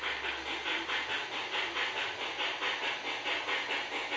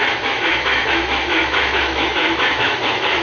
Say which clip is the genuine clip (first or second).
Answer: first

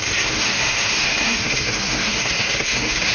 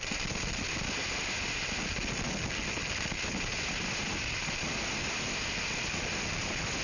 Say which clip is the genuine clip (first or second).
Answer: second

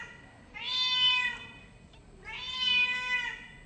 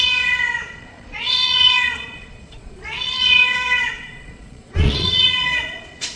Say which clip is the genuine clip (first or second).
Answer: first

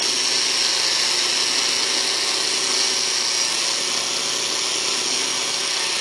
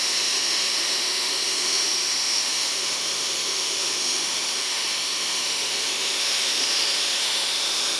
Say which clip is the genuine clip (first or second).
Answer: first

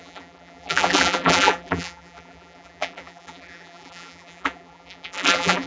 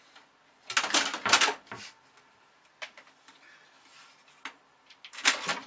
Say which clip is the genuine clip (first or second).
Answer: second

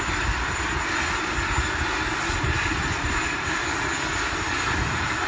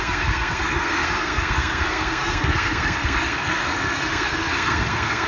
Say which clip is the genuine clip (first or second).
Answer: first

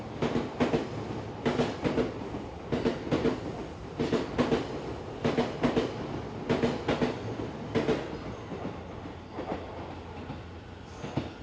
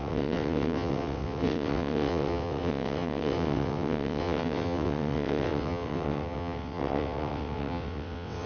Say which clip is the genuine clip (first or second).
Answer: first